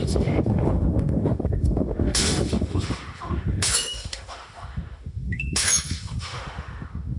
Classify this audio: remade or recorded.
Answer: remade